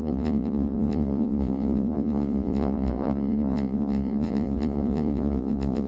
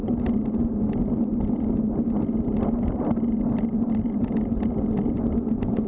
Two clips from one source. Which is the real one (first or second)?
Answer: second